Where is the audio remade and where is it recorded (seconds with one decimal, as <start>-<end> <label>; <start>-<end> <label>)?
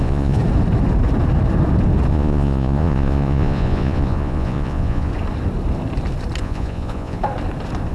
0.0-0.4 remade; 0.4-2.1 recorded; 2.1-5.1 remade; 5.1-6.4 recorded; 6.4-7.2 remade; 7.2-7.9 recorded